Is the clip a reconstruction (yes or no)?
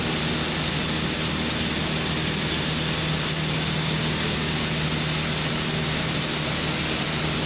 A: no